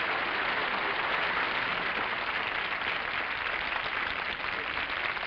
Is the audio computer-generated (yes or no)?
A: no